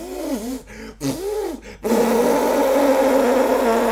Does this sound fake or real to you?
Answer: real